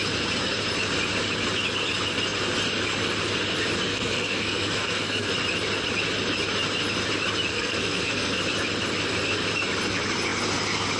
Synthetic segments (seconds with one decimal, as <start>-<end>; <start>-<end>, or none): 3.9-5.3; 7.5-8.4